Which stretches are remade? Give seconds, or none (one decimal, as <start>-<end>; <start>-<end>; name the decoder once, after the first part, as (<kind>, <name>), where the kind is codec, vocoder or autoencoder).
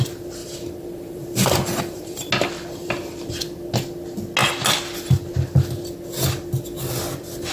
0.4-2.3 (vocoder, BigVGAN v2); 2.8-3.4